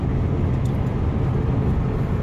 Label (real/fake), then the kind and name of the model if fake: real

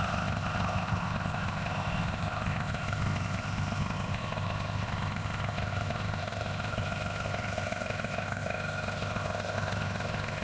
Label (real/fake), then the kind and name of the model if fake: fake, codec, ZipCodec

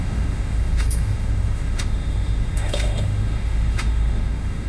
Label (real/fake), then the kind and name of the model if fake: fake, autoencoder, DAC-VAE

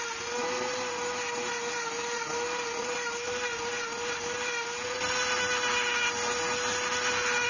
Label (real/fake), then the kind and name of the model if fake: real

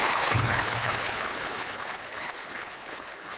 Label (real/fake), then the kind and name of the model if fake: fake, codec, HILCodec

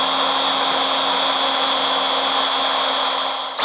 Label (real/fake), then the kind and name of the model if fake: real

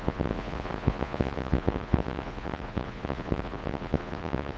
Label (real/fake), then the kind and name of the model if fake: fake, vocoder, Vocos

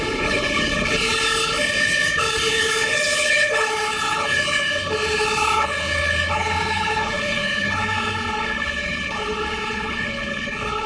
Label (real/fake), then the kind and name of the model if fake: fake, codec, HILCodec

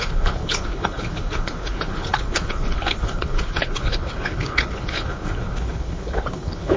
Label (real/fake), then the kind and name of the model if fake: fake, codec, HILCodec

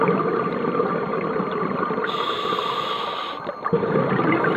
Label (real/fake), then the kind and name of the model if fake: real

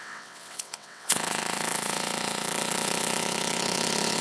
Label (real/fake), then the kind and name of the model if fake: fake, vocoder, WaveNeXt